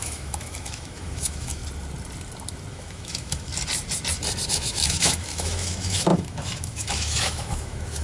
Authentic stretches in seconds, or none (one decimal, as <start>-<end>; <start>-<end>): 1.6-2.7; 3.5-4.5